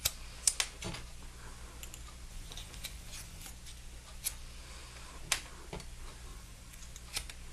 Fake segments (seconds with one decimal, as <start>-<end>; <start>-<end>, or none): 2.3-3.5; 6.3-6.8